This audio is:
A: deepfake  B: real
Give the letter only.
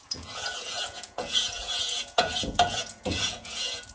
A